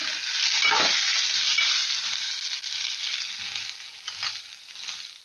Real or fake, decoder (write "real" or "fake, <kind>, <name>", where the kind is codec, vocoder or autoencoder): real